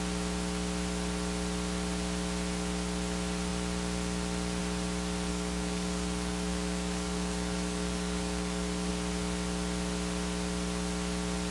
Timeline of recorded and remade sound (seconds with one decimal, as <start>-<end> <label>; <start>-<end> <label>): 0.0-5.3 recorded; 5.3-8.9 remade; 8.9-11.5 recorded

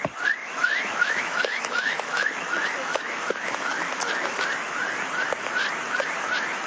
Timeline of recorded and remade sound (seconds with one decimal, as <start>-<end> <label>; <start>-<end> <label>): 0.0-0.4 recorded; 0.4-4.4 remade; 4.4-6.7 recorded

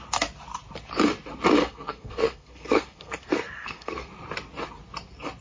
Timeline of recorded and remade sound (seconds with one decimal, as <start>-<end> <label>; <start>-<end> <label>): 0.0-1.6 recorded; 1.6-4.1 remade; 4.1-5.4 recorded

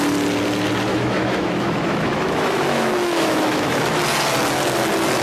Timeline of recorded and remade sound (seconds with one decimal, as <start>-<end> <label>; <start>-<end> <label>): 0.0-0.9 recorded; 0.9-3.8 remade; 3.8-5.2 recorded

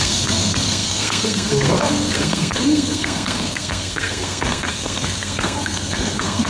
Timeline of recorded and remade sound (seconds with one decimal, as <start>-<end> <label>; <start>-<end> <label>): 0.0-6.5 remade

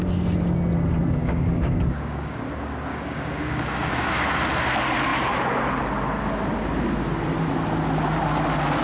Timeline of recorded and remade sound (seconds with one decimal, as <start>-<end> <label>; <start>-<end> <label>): 0.0-1.2 recorded; 1.2-2.5 remade; 2.5-2.9 recorded; 2.9-4.1 remade; 4.1-8.8 recorded

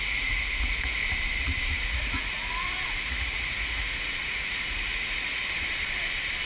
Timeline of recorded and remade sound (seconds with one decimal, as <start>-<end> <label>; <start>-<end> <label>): 0.0-1.0 remade; 1.0-1.8 recorded; 1.8-5.4 remade; 5.4-6.5 recorded